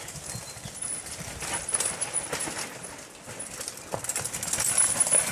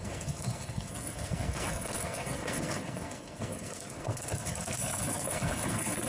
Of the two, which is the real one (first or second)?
first